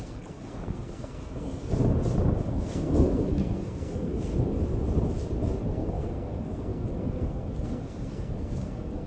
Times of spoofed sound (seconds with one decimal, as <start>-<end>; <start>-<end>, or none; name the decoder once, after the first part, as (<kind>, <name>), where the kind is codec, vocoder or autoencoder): 0.0-1.8 (codec, SNAC); 2.5-4.3; 5.7-9.1